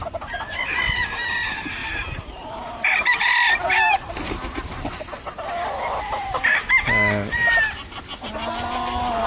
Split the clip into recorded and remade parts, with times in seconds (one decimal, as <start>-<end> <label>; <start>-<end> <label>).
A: 0.0-1.8 recorded; 1.8-6.0 remade; 6.0-9.3 recorded